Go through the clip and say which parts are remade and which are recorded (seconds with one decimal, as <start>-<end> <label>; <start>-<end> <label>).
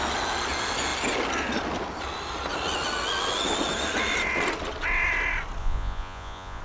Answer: 0.0-5.6 recorded; 5.6-6.6 remade